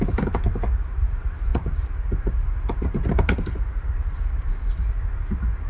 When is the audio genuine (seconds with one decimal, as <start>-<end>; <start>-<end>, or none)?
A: 0.0-1.5; 4.9-5.7